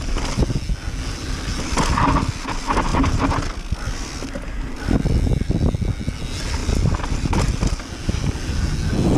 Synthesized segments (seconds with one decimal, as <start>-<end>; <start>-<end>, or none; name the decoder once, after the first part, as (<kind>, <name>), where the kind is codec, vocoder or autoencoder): none